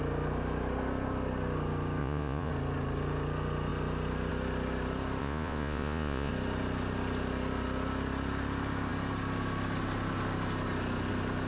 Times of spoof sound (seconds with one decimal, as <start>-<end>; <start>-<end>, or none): 2.0-2.5; 5.2-6.3